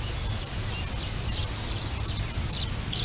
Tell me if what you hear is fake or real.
real